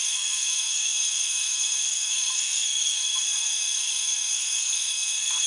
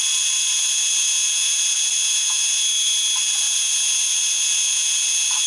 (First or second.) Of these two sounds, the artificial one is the first